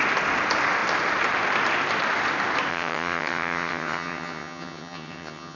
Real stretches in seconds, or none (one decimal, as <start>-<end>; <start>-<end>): 0.0-2.7